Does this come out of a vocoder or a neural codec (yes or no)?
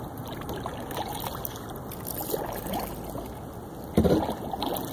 no